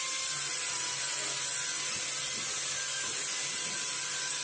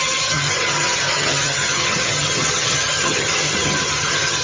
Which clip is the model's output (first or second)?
second